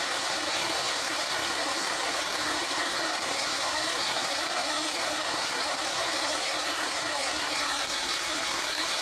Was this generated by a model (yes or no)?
yes